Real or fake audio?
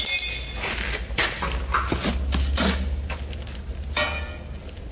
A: real